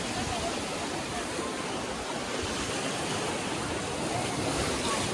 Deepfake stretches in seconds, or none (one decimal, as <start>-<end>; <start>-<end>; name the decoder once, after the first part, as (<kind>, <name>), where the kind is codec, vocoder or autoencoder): none